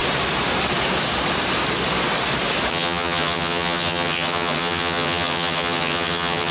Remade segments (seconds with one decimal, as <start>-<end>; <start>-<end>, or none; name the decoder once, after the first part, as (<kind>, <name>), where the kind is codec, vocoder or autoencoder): 2.7-6.5 (vocoder, HiFi-GAN)